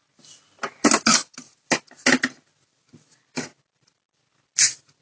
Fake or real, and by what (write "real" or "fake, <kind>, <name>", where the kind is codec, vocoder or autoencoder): real